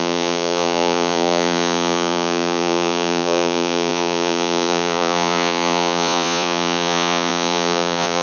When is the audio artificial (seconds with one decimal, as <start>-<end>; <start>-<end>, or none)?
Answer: 0.0-8.2